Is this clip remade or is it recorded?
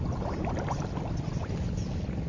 recorded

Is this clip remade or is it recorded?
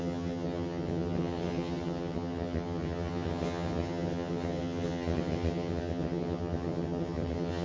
remade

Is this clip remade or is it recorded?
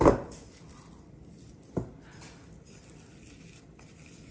recorded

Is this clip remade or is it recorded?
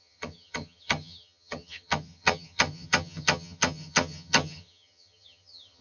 remade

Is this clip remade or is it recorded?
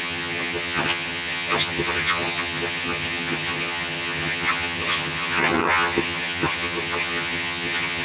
remade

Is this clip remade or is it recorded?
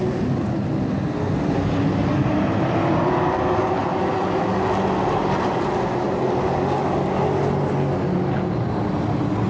recorded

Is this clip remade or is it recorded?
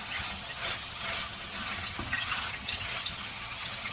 remade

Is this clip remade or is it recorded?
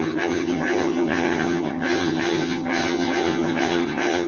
remade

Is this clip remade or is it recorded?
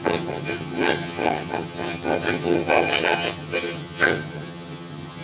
remade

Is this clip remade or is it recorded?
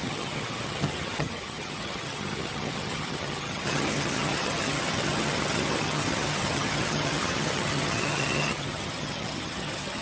remade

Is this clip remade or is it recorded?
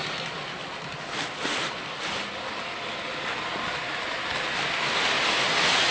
recorded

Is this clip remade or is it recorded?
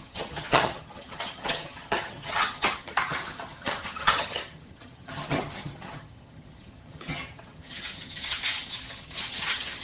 remade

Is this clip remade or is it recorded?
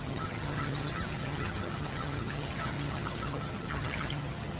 remade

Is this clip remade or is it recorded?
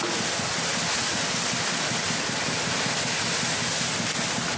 recorded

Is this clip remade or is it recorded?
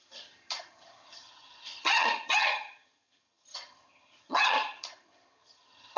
remade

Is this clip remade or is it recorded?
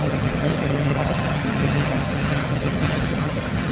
remade